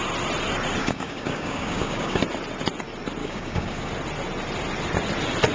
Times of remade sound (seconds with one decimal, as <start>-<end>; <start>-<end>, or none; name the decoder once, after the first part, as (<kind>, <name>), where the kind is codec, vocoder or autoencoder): 0.8-2.2 (codec, DAC); 3.2-3.9